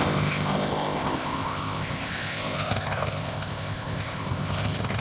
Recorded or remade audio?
remade